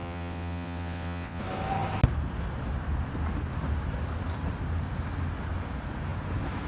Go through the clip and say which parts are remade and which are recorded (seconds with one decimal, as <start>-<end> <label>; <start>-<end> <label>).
0.0-1.4 remade; 1.4-6.7 recorded